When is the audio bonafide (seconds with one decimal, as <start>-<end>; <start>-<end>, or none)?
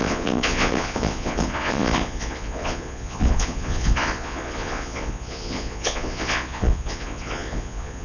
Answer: none